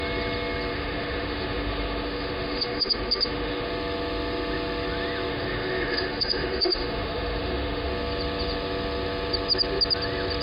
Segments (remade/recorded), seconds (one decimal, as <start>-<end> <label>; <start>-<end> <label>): 0.0-0.7 recorded; 0.7-3.7 remade; 3.7-5.3 recorded; 5.3-7.9 remade; 7.9-10.4 recorded